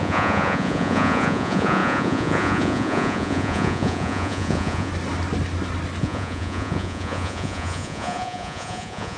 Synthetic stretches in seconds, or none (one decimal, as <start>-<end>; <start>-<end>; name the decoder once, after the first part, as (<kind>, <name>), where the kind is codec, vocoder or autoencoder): 0.0-4.9 (vocoder, Vocos); 6.0-9.2